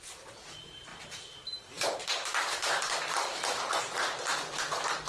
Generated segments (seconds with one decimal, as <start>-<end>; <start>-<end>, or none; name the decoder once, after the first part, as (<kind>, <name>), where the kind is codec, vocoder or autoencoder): 0.0-5.1 (vocoder, BigVGAN v2)